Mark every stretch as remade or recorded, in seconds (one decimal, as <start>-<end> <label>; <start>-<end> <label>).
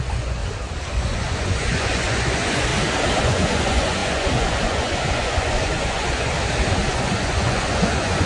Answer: 0.0-0.4 remade; 0.4-0.9 recorded; 0.9-2.7 remade; 2.7-3.2 recorded; 3.2-6.3 remade; 6.3-6.9 recorded; 6.9-8.3 remade